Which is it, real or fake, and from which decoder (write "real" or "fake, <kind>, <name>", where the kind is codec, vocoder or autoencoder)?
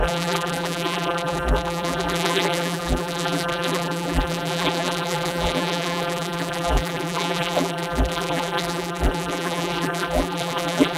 fake, vocoder, BigVGAN v2